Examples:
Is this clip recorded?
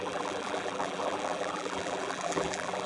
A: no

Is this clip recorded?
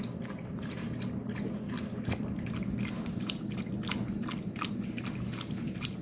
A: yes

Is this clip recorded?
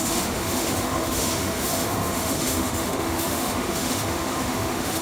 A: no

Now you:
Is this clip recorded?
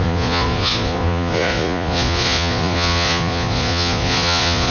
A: no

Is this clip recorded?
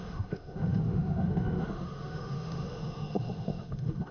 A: no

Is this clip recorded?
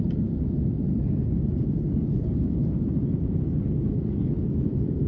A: yes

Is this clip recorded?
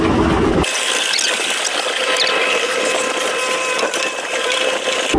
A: yes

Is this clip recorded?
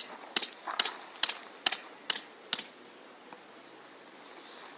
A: yes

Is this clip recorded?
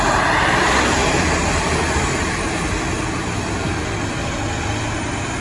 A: yes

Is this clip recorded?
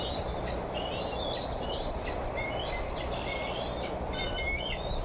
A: no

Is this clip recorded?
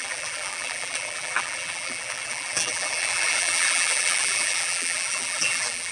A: no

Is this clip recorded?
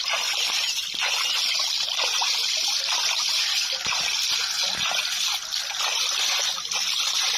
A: yes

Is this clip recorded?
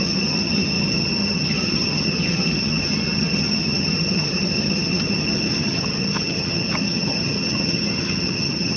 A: no